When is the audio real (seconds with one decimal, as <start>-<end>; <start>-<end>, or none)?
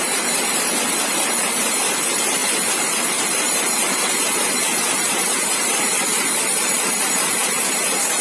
none